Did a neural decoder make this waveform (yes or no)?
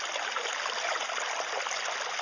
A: no